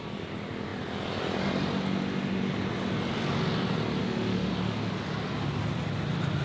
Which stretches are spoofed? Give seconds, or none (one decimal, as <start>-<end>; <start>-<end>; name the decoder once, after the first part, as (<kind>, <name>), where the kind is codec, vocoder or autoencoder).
4.0-4.5 (autoencoder, DAC-VAE)

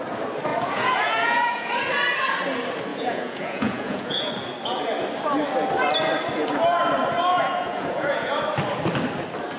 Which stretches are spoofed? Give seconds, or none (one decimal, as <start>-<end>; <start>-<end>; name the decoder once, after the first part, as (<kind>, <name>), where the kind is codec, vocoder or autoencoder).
0.5-1.7 (vocoder, Vocos); 2.9-4.3; 7.3-8.3

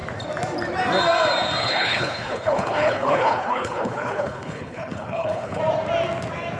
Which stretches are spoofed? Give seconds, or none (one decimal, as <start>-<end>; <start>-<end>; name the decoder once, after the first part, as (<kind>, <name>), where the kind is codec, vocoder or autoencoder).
1.6-5.6 (codec, HILCodec)